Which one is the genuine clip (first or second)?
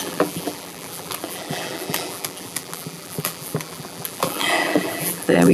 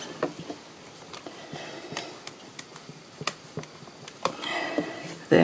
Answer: second